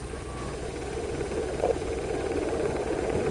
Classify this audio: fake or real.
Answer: fake